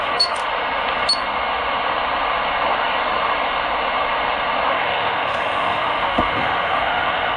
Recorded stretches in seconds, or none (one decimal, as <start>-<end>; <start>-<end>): 0.4-4.7

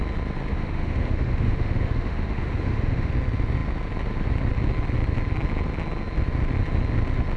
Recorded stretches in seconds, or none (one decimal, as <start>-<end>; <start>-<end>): 0.0-0.5; 3.1-7.4

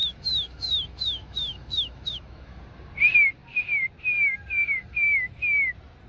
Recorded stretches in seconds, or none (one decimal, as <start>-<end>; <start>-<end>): 2.6-6.1

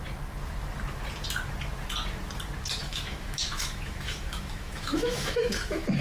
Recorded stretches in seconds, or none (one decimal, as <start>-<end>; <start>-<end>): 0.0-2.8